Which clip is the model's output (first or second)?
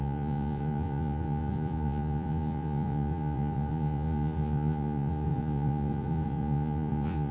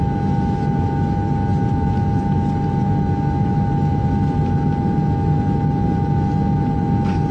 first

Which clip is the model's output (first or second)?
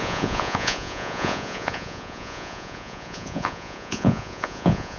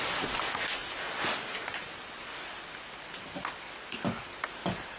first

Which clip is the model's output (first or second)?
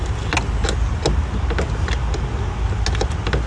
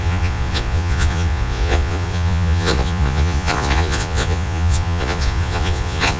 second